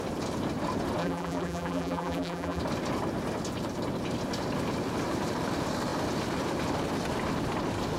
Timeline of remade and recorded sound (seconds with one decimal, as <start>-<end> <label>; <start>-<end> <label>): 0.0-1.0 recorded; 1.0-2.6 remade; 2.6-8.0 recorded